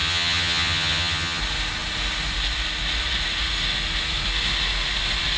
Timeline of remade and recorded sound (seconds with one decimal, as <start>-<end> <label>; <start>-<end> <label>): 0.0-1.4 remade; 1.4-5.4 recorded